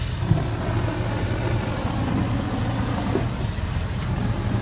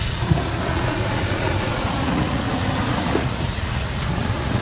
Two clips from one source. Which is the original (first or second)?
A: first